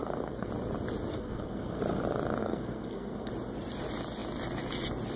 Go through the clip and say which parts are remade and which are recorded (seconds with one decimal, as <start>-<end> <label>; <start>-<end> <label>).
0.0-0.5 remade; 0.5-1.1 recorded; 1.1-1.8 remade; 1.8-2.4 recorded; 2.4-3.3 remade; 3.3-5.2 recorded